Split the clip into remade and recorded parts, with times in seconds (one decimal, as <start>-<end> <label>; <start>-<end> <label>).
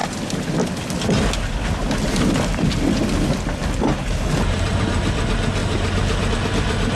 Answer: 0.0-7.0 recorded